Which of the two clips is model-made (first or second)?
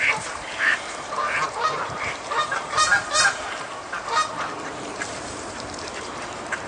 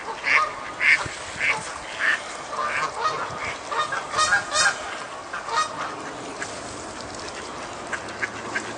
first